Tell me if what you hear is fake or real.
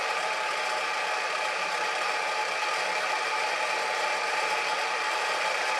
real